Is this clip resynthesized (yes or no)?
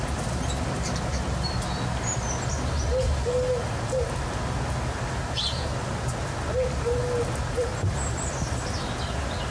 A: no